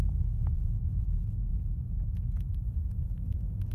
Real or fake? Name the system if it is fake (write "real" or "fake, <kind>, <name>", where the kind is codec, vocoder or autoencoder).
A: fake, vocoder, Vocos